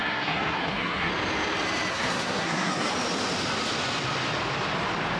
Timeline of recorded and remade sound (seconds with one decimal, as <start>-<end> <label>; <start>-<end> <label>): 0.0-1.1 remade; 1.1-1.9 recorded; 1.9-2.9 remade; 2.9-5.2 recorded